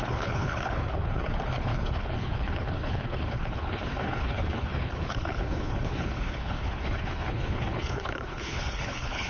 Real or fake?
fake